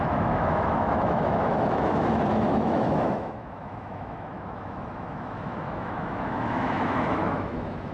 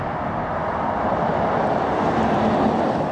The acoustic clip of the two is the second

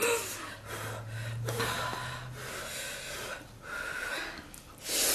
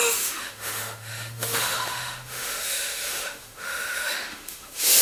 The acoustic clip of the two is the first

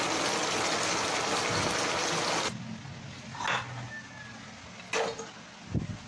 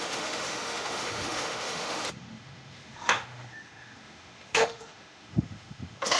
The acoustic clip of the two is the first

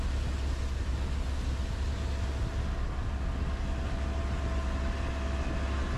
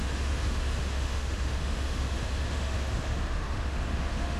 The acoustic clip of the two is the first